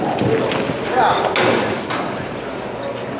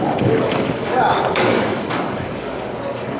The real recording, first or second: first